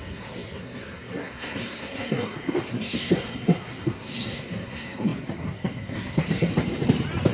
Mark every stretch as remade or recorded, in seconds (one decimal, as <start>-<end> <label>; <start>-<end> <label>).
0.0-6.5 remade; 6.5-7.3 recorded